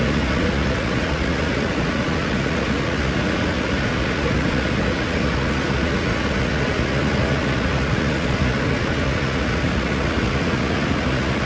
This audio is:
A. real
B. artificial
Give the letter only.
B